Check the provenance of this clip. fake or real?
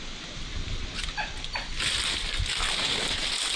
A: real